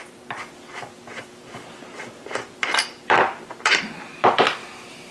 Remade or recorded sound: remade